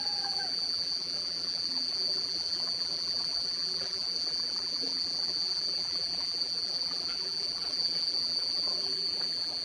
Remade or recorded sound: remade